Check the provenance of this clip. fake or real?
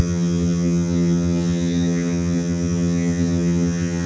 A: fake